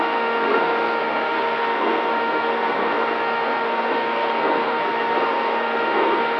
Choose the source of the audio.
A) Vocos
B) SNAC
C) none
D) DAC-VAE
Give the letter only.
B